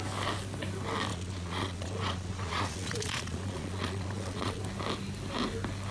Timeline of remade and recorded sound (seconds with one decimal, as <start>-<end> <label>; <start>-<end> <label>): 0.0-1.1 recorded; 1.1-4.6 remade; 4.6-5.9 recorded